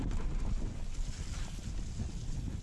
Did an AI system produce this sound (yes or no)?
no